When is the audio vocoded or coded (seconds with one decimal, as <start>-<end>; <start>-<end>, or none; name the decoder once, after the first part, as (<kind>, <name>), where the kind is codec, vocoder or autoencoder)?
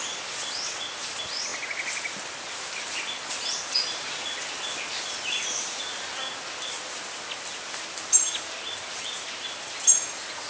none